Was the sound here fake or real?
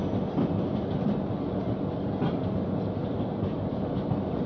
real